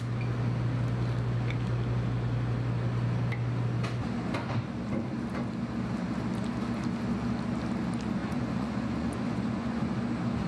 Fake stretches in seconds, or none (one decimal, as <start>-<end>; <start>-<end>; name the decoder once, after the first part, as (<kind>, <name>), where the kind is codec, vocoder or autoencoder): 8.2-9.9 (vocoder, Vocos)